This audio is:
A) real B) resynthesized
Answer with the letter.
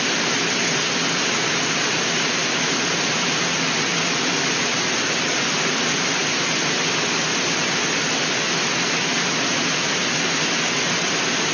A